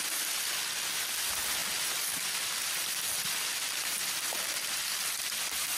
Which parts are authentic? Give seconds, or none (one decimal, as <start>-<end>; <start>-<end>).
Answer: 0.0-5.8